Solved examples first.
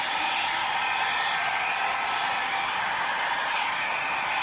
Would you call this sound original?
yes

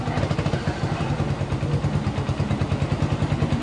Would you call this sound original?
yes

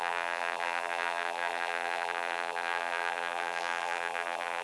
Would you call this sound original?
no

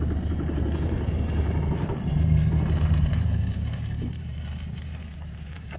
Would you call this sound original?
no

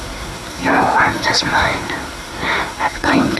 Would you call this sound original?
no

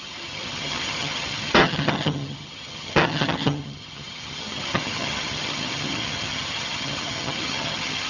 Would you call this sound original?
no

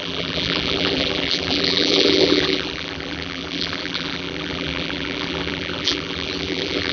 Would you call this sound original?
no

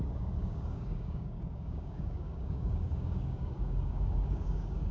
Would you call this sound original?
no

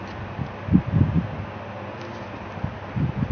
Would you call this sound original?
yes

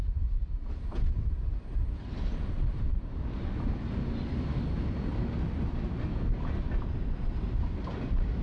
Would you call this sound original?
yes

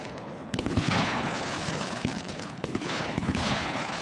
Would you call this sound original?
no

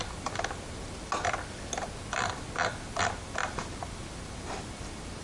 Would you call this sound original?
yes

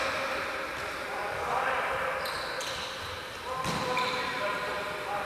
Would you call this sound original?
yes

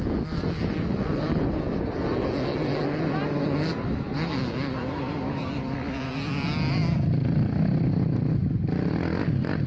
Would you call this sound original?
yes